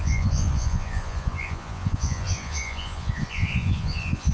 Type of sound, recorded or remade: remade